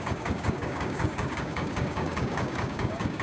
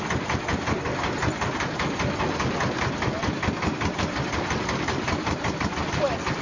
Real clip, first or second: second